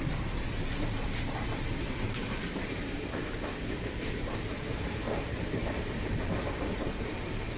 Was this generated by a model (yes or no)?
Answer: yes